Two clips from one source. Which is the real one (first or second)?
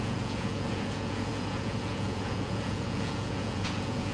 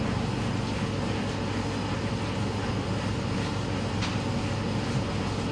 second